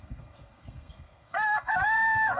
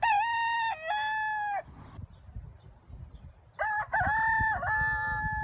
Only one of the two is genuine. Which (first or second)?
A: second